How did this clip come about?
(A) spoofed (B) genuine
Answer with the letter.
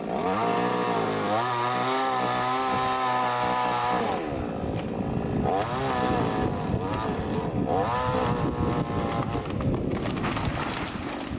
B